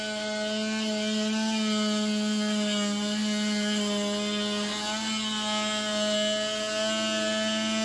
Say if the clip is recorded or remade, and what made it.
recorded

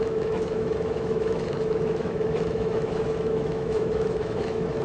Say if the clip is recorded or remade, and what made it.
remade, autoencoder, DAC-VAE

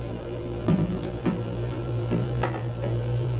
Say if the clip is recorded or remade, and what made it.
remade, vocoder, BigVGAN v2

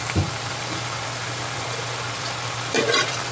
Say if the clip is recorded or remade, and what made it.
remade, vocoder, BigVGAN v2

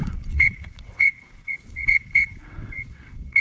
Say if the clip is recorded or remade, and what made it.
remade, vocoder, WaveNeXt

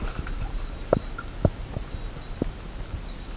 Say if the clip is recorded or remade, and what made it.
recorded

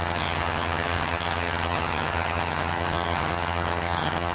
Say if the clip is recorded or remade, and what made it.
remade, vocoder, HiFi-GAN